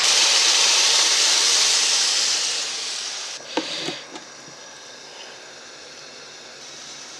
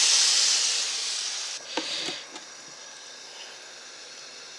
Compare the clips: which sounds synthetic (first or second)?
first